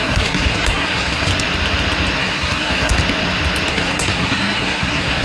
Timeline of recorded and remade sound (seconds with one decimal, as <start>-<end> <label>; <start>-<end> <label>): 0.0-1.3 remade; 1.3-2.2 recorded; 2.2-2.9 remade; 2.9-3.7 recorded; 3.7-5.2 remade